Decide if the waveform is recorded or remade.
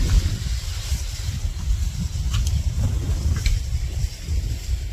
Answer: recorded